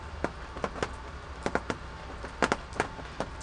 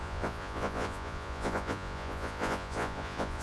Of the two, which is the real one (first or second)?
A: first